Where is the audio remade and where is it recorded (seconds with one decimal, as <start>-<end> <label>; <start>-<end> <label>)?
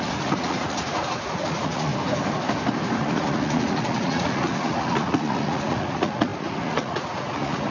0.0-1.9 remade; 1.9-3.0 recorded; 3.0-7.7 remade